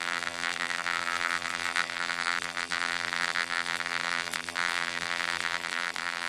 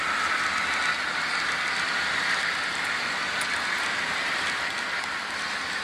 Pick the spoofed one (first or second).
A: first